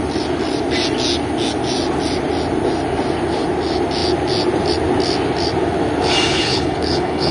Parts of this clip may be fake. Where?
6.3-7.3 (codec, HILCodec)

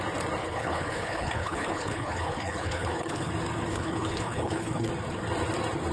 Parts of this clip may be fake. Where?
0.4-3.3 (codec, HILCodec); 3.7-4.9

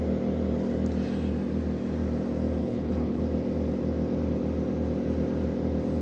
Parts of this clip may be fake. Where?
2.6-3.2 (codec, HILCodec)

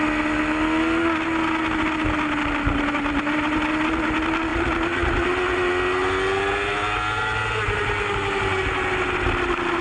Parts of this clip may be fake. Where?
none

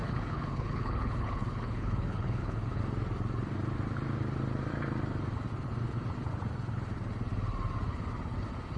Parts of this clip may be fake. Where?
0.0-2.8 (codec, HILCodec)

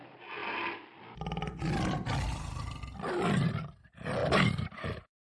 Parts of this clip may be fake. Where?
none

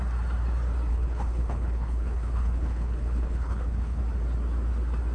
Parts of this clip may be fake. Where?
0.9-4.0 (codec, HILCodec)

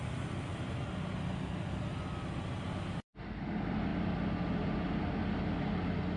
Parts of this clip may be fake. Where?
none